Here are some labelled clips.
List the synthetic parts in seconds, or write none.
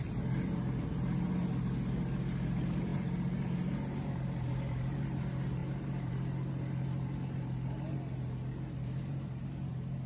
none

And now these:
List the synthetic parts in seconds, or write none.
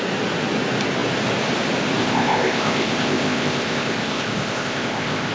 2.0-5.3 (codec, ZipCodec)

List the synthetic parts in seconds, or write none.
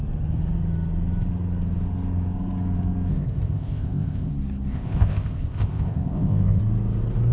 3.1-4.3 (codec, ZipCodec); 4.7-6.6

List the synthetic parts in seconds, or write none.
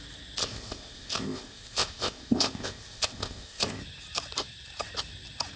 0.4-3.8 (codec, ZipCodec)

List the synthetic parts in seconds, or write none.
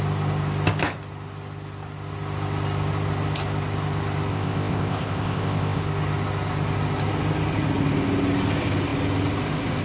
4.3-5.8 (codec, ZipCodec)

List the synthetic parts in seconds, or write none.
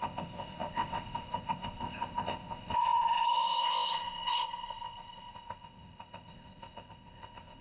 0.0-7.6 (codec, ZipCodec)